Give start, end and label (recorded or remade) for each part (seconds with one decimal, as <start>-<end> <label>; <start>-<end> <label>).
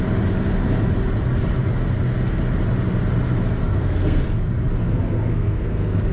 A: 0.0-3.6 recorded; 3.6-4.2 remade; 4.2-4.8 recorded; 4.8-6.1 remade